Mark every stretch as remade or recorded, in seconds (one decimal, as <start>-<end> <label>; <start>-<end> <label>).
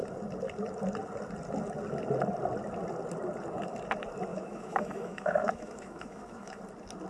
0.0-4.3 recorded; 4.3-6.6 remade; 6.6-7.1 recorded